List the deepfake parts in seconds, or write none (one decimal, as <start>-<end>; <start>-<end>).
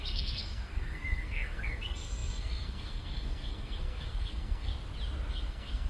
0.0-4.7; 5.3-5.9